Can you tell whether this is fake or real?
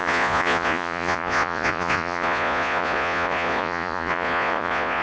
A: fake